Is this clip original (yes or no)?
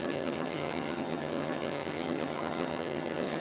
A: no